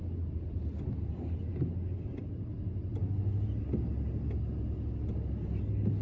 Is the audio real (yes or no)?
yes